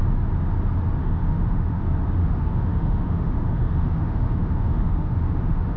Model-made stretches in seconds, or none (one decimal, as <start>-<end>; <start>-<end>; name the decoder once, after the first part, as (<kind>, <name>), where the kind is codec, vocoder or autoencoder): 1.0-1.8 (autoencoder, DAC-VAE); 2.2-5.8